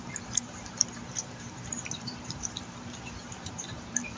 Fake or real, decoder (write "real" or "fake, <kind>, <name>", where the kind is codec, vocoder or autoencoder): fake, vocoder, BigVGAN v2